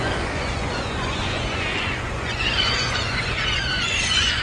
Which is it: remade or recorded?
remade